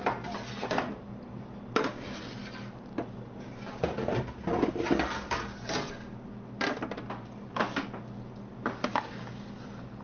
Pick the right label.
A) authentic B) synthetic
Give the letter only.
A